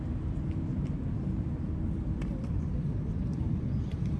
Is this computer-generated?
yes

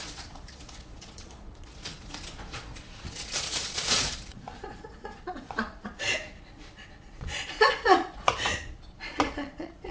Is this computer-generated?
yes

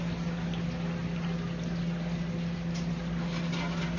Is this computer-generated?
no